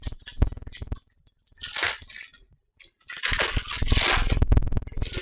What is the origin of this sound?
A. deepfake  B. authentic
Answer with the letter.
B